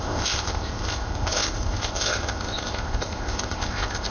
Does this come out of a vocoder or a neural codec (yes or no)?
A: yes